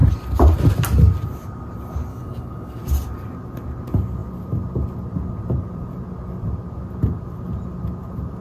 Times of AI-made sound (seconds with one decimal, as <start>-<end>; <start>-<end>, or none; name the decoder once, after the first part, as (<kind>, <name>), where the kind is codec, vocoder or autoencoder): 2.1-2.8 (codec, DAC)